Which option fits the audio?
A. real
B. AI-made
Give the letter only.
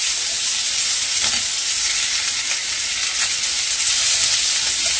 A